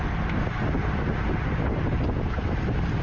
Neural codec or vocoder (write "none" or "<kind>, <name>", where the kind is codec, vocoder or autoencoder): none